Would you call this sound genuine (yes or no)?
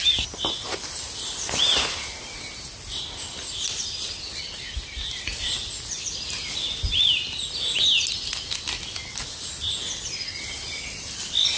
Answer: yes